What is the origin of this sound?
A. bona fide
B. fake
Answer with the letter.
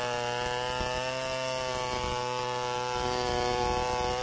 A